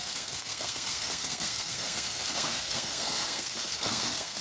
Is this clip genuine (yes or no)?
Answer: no